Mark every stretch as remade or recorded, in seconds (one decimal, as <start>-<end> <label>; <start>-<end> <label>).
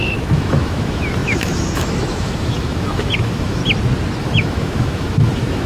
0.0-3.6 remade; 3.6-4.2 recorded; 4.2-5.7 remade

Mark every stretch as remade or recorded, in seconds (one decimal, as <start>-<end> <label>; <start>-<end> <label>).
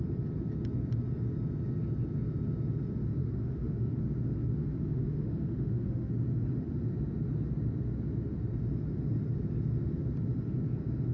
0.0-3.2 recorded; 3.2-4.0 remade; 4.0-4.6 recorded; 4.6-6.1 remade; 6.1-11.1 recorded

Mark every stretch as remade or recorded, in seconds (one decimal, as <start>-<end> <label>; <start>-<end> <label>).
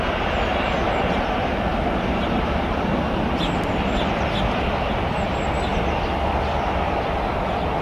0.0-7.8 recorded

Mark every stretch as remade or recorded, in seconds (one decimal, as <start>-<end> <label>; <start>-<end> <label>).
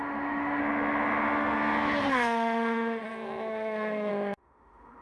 0.0-0.6 remade; 0.6-2.1 recorded; 2.1-5.0 remade